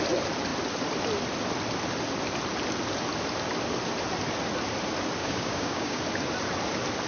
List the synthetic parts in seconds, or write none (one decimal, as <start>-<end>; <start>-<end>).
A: 5.2-6.0